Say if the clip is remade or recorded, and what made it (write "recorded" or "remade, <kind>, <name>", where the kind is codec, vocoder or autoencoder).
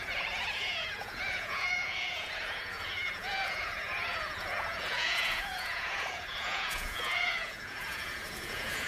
remade, vocoder, Vocos